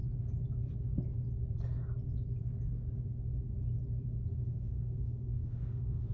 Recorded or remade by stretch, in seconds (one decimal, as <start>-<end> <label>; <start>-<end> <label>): 0.0-4.3 recorded; 4.3-6.1 remade